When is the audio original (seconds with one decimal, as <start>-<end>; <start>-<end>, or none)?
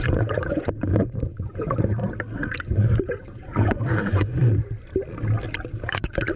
2.0-2.6; 4.4-5.9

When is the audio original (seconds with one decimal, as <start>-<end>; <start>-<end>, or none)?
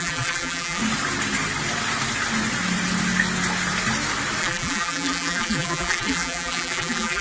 0.8-4.4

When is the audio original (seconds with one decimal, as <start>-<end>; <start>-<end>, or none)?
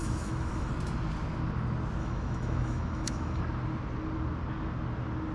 0.7-2.0; 3.4-5.3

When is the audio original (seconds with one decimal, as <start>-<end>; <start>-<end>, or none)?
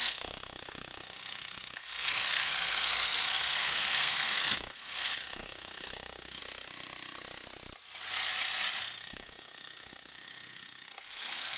6.4-8.8